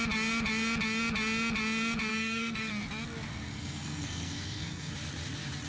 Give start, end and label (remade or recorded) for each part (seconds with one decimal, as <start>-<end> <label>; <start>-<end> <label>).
0.0-2.1 recorded; 2.1-2.7 remade; 2.7-3.3 recorded; 3.3-4.9 remade; 4.9-5.7 recorded